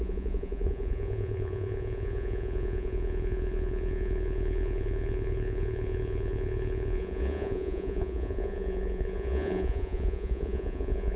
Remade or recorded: remade